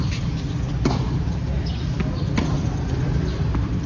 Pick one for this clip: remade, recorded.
recorded